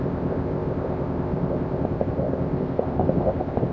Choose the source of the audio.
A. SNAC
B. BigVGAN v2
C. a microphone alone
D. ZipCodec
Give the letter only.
D